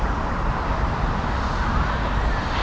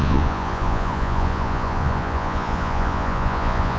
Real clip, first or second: first